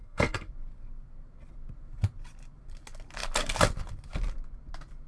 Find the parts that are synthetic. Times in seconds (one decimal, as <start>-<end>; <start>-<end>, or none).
0.0-0.5

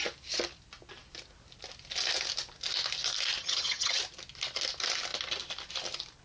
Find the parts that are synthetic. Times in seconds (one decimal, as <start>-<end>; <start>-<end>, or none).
3.4-4.0

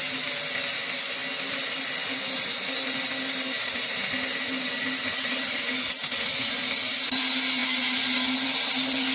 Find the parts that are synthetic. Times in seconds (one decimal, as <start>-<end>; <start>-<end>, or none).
none

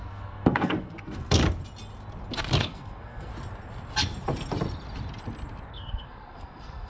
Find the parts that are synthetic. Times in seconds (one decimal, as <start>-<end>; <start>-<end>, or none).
0.0-1.4; 2.6-3.3; 5.7-6.9